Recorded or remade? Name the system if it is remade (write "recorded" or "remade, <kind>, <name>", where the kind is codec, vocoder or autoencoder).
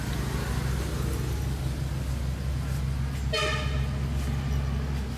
recorded